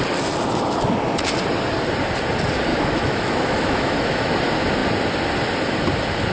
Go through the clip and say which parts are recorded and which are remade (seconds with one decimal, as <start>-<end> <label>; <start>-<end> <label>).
0.0-2.7 recorded; 2.7-4.3 remade; 4.3-6.3 recorded